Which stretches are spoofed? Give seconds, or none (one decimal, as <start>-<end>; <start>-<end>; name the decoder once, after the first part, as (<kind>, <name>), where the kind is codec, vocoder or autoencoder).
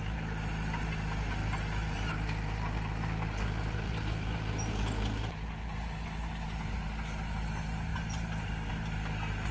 7.9-8.7 (vocoder, BigVGAN v2)